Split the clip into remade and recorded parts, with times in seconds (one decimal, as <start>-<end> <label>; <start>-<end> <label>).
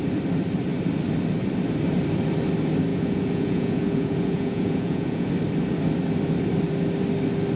0.0-2.9 recorded; 2.9-5.3 remade; 5.3-7.6 recorded